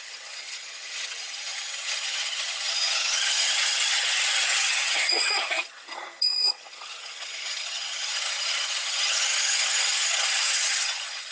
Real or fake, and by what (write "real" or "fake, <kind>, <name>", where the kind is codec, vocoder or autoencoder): fake, vocoder, HiFi-GAN